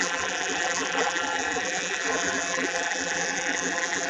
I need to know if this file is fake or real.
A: fake